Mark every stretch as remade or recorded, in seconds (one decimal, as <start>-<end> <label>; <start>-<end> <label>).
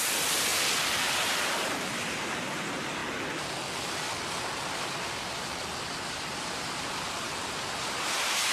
0.0-3.0 remade; 3.0-6.1 recorded; 6.1-8.5 remade